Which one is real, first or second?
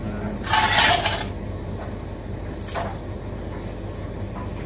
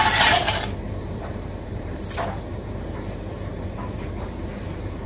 first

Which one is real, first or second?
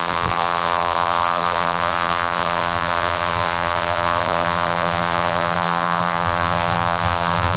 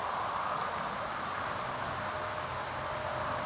second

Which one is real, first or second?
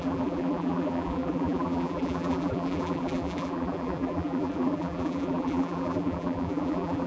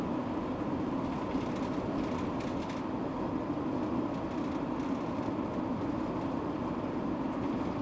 second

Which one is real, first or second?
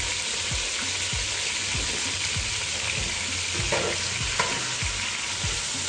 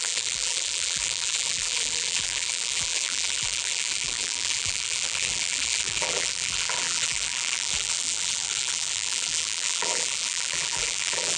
first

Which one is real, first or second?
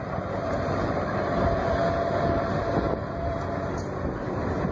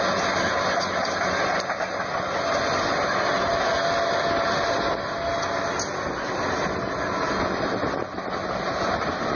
second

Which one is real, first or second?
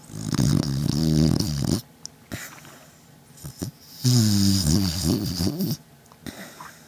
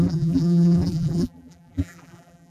first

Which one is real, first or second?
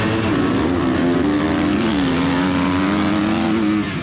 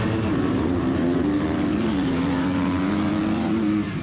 first